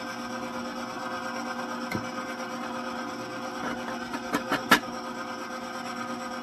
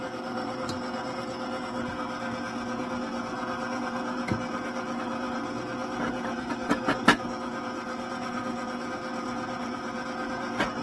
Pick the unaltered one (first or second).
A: first